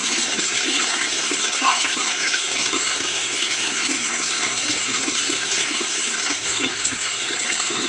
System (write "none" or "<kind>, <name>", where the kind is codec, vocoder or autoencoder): codec, SNAC